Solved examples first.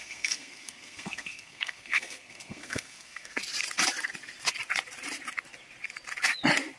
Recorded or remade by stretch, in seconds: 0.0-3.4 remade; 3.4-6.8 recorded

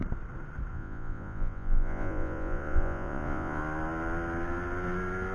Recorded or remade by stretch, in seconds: 0.0-0.7 recorded; 0.7-3.6 remade; 3.6-5.3 recorded

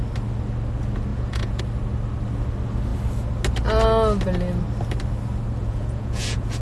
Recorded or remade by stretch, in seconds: 0.0-1.1 recorded; 1.1-1.6 remade; 1.6-5.6 recorded; 5.6-6.6 remade

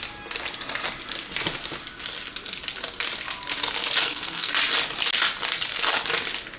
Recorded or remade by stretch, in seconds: 0.0-4.0 recorded; 4.0-4.5 remade; 4.5-6.6 recorded

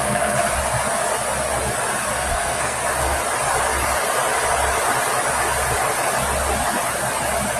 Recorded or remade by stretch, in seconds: 0.0-0.4 remade; 0.4-2.1 recorded; 2.1-2.8 remade; 2.8-7.6 recorded

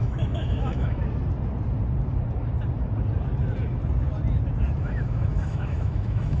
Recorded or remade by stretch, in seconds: 0.0-1.0 remade; 1.0-4.8 recorded; 4.8-6.4 remade

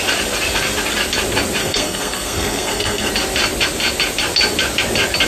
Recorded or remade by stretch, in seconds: 0.0-1.6 recorded; 1.6-3.1 remade; 3.1-5.3 recorded